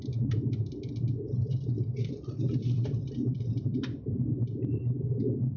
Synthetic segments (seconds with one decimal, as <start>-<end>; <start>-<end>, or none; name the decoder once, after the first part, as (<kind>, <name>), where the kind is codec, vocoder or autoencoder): 2.0-5.6 (vocoder, BigVGAN v2)